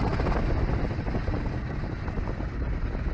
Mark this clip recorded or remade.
recorded